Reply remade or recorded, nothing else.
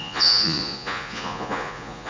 remade